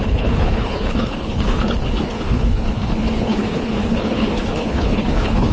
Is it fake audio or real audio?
fake